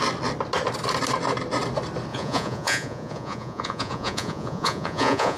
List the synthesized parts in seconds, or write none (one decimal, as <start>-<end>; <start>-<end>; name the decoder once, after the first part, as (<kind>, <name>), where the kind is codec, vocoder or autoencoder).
2.1-5.4 (vocoder, Vocos)